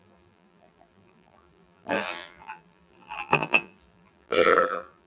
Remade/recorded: remade